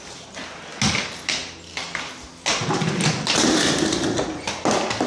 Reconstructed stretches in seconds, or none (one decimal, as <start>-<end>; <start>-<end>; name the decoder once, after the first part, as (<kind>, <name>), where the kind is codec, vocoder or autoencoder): none